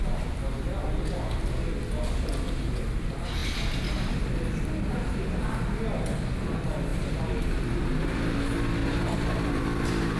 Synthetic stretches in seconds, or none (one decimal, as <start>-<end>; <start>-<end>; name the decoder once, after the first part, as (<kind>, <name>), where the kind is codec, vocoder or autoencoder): 8.8-10.2 (vocoder, BigVGAN v2)